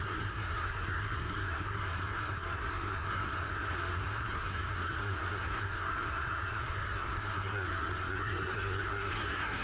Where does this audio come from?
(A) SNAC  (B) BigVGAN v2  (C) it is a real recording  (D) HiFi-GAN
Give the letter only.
A